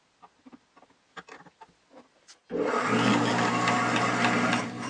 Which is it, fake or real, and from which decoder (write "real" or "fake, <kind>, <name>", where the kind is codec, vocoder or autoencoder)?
real